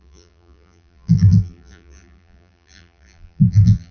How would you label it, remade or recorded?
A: remade